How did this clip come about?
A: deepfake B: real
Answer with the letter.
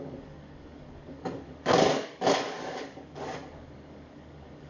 A